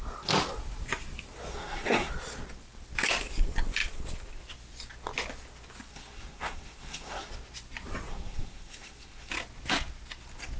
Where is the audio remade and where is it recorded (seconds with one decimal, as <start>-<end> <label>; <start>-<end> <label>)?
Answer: 0.0-1.5 recorded; 1.5-2.1 remade; 2.1-5.9 recorded; 5.9-7.3 remade; 7.3-8.1 recorded; 8.1-9.3 remade; 9.3-10.6 recorded